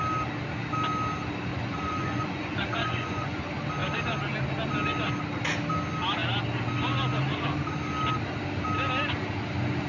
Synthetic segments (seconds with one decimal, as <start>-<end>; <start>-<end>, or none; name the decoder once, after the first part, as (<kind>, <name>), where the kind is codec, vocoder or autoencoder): 1.5-3.4 (vocoder, Vocos)